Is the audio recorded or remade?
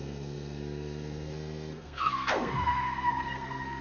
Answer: remade